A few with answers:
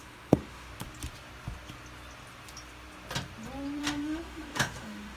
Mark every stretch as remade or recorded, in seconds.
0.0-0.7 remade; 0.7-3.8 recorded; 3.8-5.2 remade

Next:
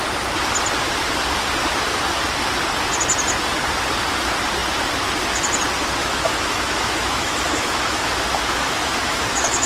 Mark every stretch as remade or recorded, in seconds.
0.0-6.0 recorded; 6.0-9.7 remade

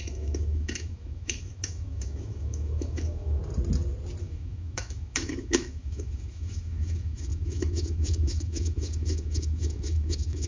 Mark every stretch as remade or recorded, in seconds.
0.0-3.4 remade; 3.4-4.2 recorded; 4.2-10.5 remade

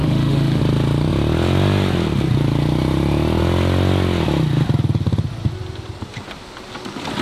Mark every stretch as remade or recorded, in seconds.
0.0-0.6 remade; 0.6-7.2 recorded